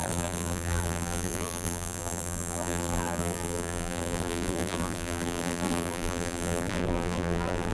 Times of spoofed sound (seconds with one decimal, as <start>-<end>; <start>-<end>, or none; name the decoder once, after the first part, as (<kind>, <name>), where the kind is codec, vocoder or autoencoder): 0.0-7.7 (vocoder, BigVGAN v2)